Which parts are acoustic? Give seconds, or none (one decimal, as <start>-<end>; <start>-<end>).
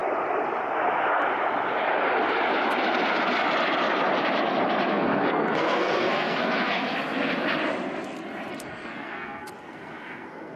0.0-4.9; 6.8-8.5